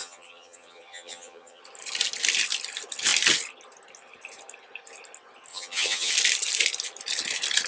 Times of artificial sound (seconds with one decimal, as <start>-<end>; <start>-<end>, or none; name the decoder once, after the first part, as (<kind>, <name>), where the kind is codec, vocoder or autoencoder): 0.0-1.6 (vocoder, HiFi-GAN); 5.5-6.1